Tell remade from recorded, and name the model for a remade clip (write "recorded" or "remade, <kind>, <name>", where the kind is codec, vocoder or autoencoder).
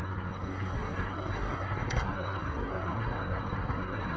remade, codec, SNAC